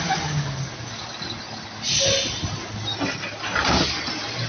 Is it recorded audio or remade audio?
recorded